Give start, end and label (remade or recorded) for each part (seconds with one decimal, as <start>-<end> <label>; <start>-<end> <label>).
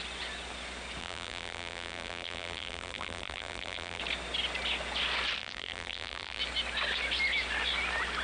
0.0-1.0 recorded; 1.0-4.0 remade; 4.0-5.4 recorded; 5.4-6.4 remade; 6.4-8.2 recorded